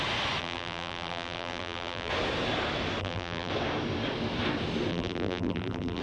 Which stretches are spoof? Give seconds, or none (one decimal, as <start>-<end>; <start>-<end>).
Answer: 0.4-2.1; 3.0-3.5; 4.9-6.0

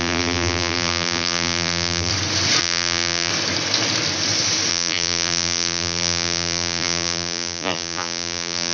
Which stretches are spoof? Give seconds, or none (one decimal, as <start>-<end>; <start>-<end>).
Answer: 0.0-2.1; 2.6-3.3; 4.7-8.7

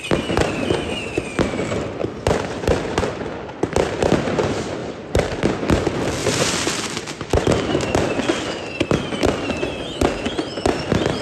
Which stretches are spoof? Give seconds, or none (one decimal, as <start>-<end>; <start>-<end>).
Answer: 4.8-5.4; 6.2-8.2

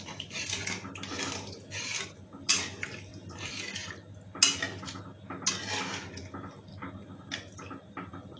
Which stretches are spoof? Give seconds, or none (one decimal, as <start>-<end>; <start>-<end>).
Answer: 0.0-3.1; 7.0-8.4